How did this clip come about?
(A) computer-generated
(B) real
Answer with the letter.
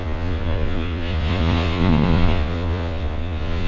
A